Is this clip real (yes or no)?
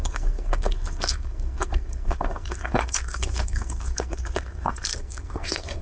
no